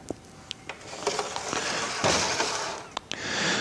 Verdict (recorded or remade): recorded